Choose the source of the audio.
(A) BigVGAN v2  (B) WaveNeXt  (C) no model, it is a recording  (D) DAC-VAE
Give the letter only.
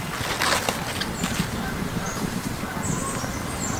C